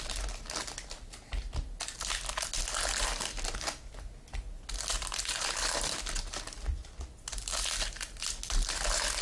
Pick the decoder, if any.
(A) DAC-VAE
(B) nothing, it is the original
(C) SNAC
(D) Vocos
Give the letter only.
B